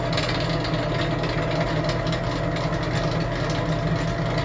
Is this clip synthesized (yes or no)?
no